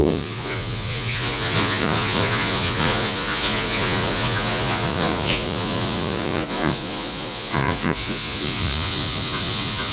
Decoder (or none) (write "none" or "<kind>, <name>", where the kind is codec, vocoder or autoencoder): vocoder, Vocos